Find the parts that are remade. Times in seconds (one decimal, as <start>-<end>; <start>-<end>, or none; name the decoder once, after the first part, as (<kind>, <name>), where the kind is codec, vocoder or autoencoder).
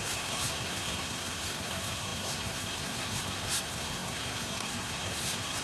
0.0-5.6 (codec, SNAC)